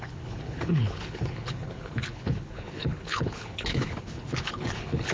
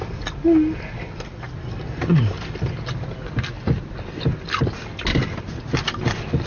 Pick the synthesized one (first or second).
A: first